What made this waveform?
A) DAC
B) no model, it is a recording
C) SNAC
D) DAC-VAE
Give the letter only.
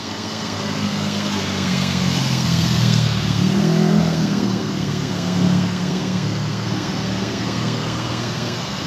C